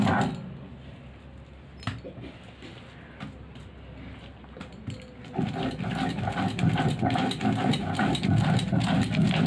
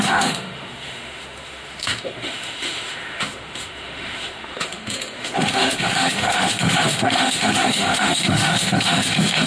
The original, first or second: first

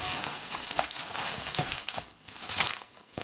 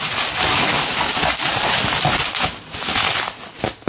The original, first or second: second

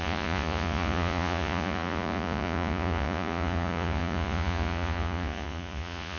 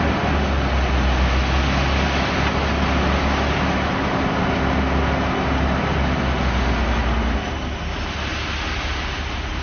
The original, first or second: second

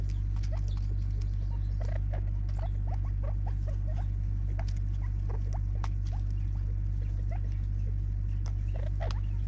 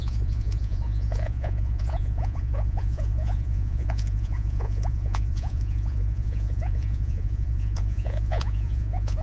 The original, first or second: first